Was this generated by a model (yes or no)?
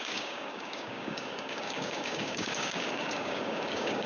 yes